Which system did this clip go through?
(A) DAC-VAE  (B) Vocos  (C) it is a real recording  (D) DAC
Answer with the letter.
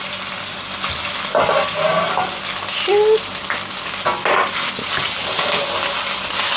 C